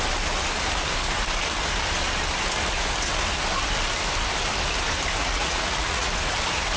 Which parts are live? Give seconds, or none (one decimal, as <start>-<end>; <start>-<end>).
0.0-5.2; 6.1-6.8